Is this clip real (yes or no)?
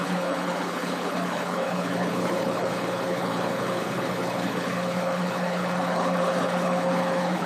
no